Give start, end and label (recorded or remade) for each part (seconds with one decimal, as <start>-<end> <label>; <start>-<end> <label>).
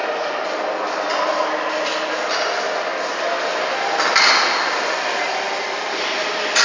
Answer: 0.0-6.6 recorded